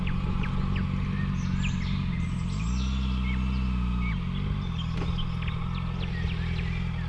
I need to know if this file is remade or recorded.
recorded